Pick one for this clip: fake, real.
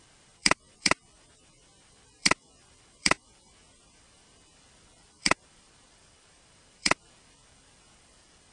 fake